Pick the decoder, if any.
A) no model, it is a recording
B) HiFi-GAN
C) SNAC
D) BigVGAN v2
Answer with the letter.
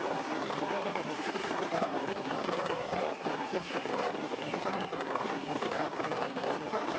C